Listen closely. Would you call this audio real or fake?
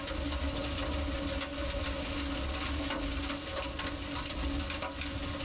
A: real